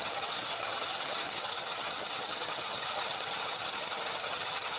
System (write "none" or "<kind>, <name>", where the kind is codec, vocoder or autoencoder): vocoder, HiFi-GAN